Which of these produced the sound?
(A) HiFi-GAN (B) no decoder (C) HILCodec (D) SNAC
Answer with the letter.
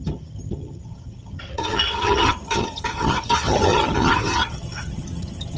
A